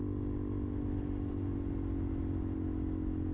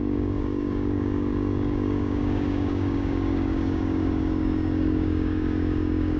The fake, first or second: second